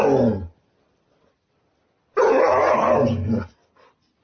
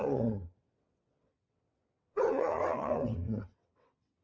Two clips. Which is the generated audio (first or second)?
second